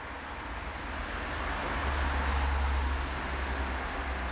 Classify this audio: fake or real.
real